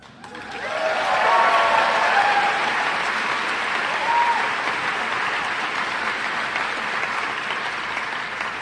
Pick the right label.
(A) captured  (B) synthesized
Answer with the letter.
A